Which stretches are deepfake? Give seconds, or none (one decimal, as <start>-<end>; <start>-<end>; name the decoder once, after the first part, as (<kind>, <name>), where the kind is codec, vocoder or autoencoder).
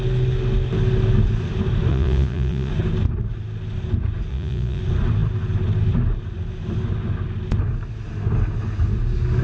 1.9-2.7 (vocoder, Vocos); 4.3-4.8